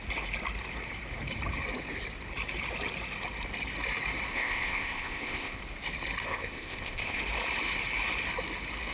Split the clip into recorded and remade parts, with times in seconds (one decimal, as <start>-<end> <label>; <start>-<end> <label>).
0.0-4.3 recorded; 4.3-5.6 remade; 5.6-6.2 recorded; 6.2-7.2 remade; 7.2-8.9 recorded